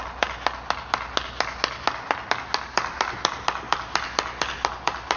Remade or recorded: recorded